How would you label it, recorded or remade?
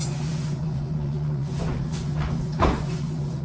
remade